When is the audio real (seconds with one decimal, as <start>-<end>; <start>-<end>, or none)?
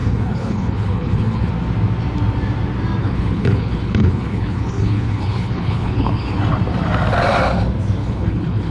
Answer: 1.5-3.0; 6.4-8.0